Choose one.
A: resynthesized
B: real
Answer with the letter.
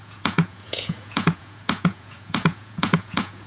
A